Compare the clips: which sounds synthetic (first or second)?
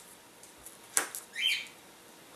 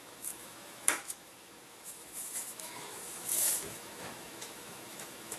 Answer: second